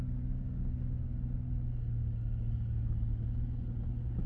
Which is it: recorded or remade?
recorded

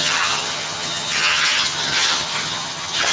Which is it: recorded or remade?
remade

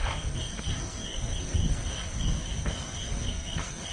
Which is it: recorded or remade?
remade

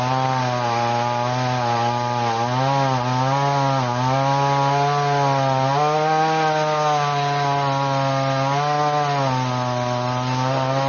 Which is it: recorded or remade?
recorded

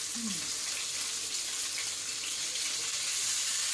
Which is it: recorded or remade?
recorded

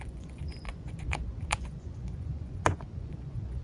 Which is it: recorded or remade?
remade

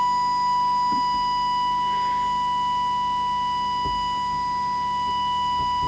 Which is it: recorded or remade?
recorded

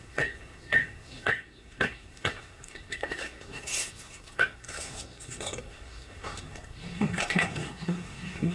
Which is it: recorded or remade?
remade